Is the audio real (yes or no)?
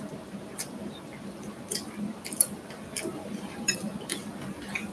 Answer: no